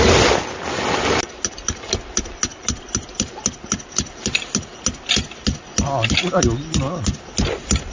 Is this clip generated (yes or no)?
no